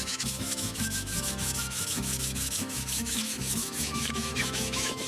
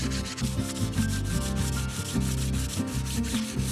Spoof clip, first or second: first